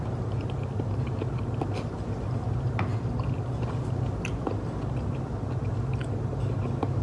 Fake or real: real